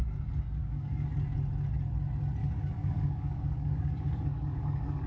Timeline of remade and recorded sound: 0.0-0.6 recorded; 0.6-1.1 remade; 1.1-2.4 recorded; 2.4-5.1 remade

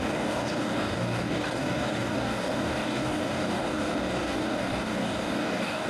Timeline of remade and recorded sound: 0.0-5.9 remade